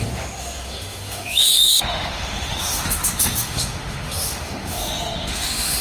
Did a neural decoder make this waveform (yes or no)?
yes